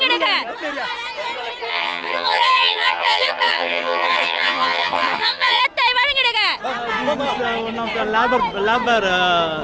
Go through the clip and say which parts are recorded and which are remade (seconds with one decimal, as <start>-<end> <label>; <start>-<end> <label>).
0.0-1.7 recorded; 1.7-5.6 remade; 5.6-9.6 recorded